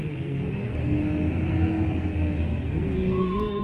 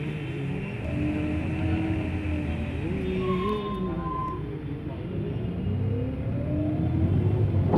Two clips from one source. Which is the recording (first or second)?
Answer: second